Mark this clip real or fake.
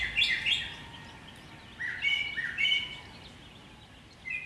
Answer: real